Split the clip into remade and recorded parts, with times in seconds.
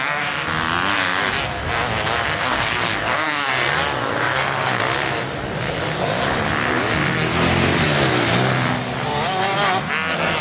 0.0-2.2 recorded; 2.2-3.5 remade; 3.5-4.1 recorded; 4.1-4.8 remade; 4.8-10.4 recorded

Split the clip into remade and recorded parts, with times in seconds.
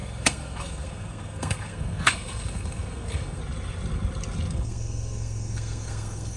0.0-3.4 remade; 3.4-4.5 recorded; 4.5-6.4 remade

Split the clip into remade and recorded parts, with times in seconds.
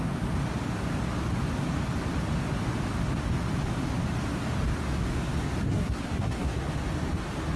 0.0-5.7 recorded; 5.7-6.7 remade; 6.7-7.6 recorded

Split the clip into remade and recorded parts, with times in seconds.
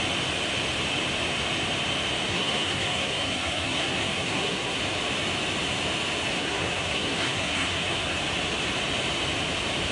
0.0-2.3 recorded; 2.3-4.8 remade; 4.8-6.3 recorded; 6.3-8.2 remade; 8.2-9.9 recorded